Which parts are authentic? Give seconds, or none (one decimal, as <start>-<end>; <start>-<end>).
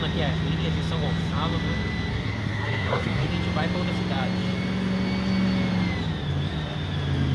0.0-2.1; 3.3-7.3